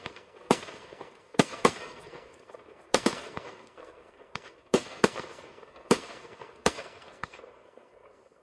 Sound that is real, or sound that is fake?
fake